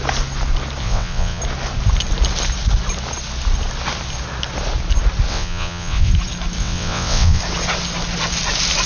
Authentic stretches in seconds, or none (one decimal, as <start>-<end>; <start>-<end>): 0.0-0.8; 1.4-5.3; 6.1-6.6; 7.4-8.9